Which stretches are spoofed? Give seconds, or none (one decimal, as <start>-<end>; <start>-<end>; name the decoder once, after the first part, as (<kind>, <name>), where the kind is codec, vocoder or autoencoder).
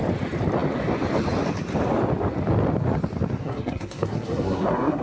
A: 3.4-5.0 (codec, SNAC)